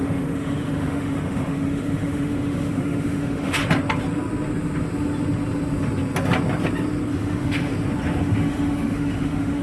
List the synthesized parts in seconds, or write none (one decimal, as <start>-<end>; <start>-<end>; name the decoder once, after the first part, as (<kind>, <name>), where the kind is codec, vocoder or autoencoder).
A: 0.0-3.6 (autoencoder, DAC-VAE); 7.1-7.7; 8.2-9.6